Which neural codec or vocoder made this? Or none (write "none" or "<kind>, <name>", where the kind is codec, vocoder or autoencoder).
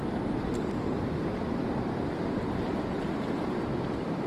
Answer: none